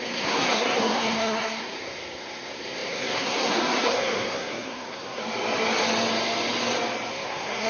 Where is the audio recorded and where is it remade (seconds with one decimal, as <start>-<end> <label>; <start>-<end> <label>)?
0.0-5.2 remade; 5.2-7.1 recorded; 7.1-7.7 remade